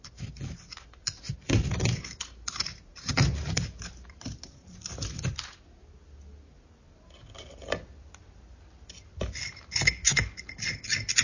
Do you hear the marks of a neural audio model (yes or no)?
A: no